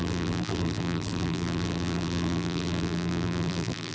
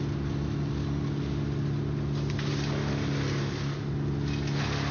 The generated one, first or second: first